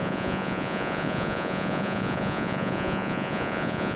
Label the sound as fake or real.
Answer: fake